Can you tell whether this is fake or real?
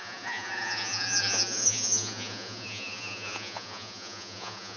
fake